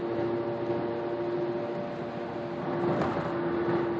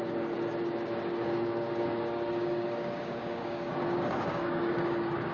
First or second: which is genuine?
first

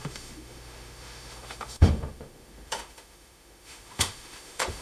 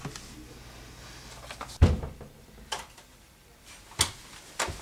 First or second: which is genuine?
second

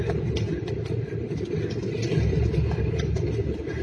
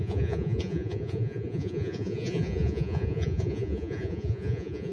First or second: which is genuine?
first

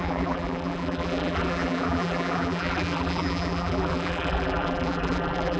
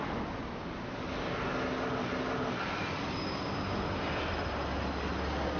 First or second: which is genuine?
second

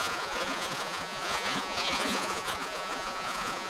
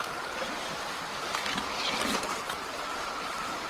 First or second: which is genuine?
second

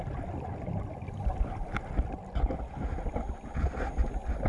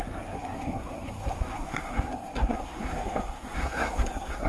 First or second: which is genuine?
first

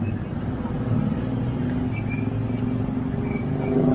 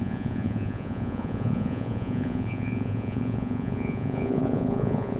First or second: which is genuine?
first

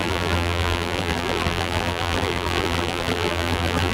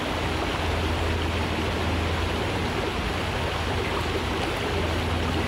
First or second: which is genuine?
second